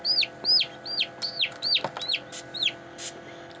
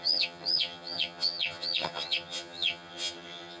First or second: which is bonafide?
first